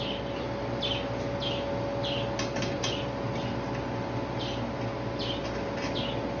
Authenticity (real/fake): real